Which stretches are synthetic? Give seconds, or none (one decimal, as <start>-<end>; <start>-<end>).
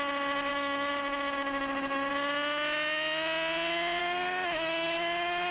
0.5-2.1; 4.0-5.5